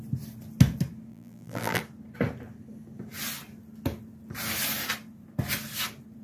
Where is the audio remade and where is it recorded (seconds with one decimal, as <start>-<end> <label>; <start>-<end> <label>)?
0.0-1.1 recorded; 1.1-1.8 remade; 1.8-6.2 recorded